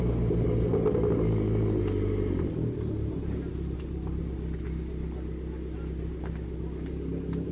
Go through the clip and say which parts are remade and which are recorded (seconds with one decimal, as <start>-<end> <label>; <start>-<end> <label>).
0.0-3.5 recorded; 3.5-4.2 remade; 4.2-7.5 recorded